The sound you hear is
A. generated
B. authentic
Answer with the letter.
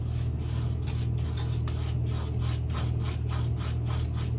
B